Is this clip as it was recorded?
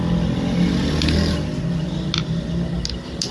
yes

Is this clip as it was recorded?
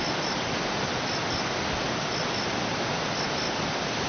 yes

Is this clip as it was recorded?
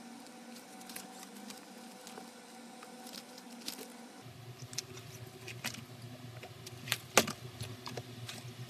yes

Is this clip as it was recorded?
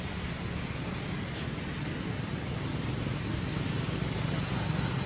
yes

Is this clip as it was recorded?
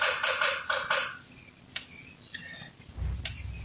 yes